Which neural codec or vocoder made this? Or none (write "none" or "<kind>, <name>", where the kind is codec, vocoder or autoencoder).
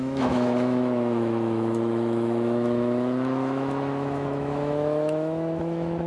autoencoder, DAC-VAE